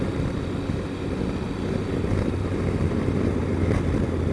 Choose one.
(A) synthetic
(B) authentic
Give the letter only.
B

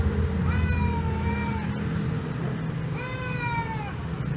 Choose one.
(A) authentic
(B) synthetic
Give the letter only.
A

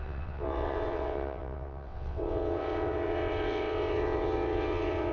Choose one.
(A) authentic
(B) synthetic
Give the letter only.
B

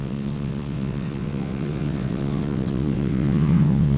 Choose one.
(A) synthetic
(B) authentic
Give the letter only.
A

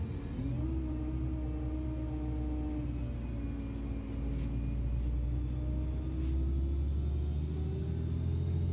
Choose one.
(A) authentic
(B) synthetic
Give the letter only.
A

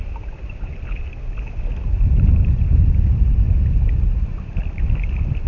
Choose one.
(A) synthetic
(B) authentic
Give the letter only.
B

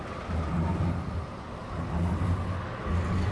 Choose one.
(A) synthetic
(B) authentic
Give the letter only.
B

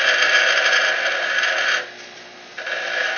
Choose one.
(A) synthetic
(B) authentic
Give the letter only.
B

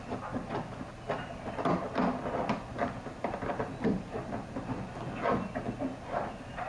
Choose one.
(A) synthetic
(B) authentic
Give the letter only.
B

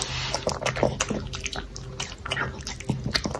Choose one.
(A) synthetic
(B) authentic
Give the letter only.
B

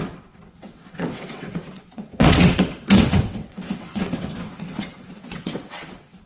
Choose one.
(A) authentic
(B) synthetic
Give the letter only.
B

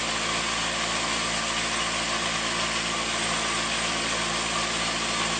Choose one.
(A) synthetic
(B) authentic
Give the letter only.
B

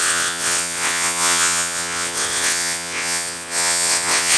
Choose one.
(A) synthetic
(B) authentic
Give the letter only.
A